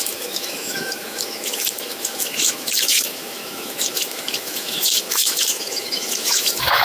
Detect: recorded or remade remade